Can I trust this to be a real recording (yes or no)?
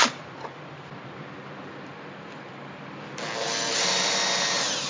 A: no